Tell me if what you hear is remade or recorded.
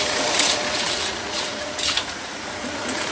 remade